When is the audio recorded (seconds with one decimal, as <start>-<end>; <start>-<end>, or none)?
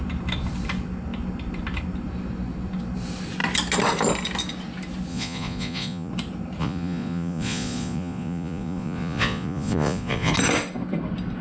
0.0-5.1; 6.1-6.6; 10.3-11.4